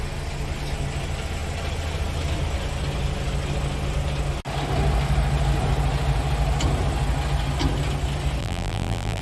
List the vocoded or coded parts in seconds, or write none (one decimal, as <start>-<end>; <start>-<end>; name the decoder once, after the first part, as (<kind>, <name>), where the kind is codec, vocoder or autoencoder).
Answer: 8.4-9.2 (vocoder, BigVGAN v2)